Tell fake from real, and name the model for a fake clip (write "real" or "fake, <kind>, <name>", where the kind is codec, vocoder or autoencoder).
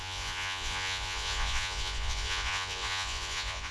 fake, vocoder, Vocos